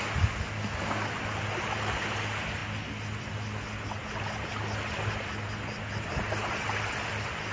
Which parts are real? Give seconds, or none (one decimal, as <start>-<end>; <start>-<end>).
0.0-7.5